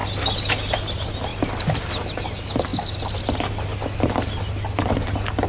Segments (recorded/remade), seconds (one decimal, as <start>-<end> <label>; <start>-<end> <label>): 0.0-5.5 recorded